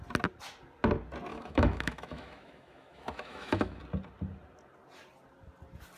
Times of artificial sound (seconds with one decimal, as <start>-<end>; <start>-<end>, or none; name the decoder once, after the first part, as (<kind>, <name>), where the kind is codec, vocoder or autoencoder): 1.3-3.8 (autoencoder, DAC-VAE)